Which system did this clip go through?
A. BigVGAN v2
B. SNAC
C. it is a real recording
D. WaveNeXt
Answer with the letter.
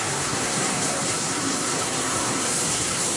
B